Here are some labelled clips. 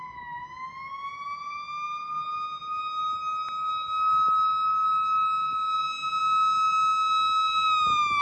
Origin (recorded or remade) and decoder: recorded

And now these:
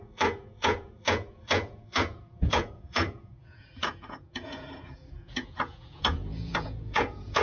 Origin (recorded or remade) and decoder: remade, vocoder, Vocos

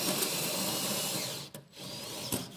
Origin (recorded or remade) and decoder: recorded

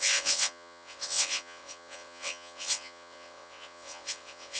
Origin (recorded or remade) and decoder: remade, vocoder, WaveNeXt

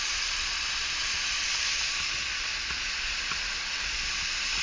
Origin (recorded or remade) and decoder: recorded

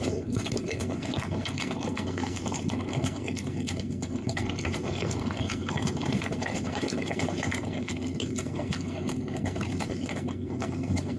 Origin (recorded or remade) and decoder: remade, codec, SNAC